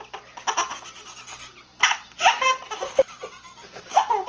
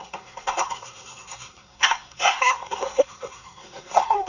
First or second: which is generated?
second